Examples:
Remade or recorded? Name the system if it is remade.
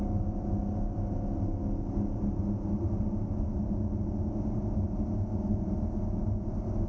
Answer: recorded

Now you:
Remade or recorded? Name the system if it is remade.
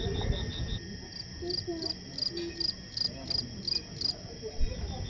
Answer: recorded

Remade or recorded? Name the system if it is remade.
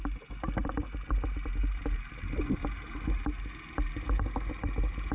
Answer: recorded